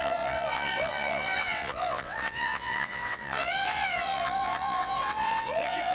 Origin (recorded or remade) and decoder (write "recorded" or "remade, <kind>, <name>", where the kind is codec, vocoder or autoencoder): remade, vocoder, WaveNeXt